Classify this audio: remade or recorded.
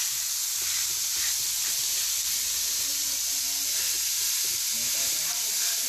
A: recorded